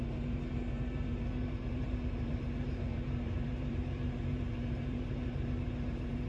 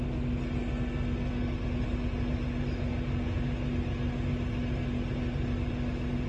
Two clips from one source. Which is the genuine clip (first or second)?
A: second